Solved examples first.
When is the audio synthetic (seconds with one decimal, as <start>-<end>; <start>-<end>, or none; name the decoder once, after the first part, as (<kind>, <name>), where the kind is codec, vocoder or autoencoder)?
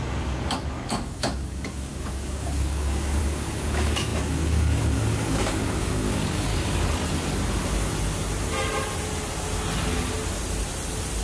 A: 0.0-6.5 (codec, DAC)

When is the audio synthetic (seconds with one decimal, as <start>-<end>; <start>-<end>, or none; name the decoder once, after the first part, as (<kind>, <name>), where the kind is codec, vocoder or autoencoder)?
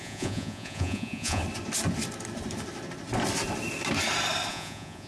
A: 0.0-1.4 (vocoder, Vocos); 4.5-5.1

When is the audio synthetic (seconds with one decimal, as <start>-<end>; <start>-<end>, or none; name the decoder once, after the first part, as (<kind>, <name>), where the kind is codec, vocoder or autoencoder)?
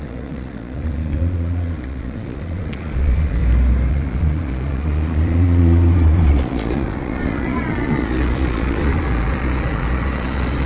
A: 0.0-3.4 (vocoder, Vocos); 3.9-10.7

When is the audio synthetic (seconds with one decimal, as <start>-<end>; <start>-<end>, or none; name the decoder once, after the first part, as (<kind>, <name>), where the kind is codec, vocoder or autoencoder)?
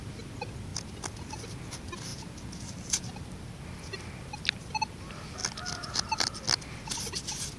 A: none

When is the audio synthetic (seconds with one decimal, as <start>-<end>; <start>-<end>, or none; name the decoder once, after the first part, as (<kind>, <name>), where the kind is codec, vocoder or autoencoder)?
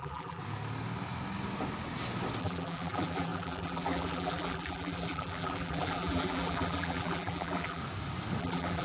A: 0.0-0.4 (vocoder, BigVGAN v2); 2.4-7.8; 8.4-8.8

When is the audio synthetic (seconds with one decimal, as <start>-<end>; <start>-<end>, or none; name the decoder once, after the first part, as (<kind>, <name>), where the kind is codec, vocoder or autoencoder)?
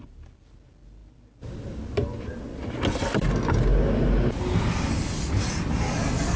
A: none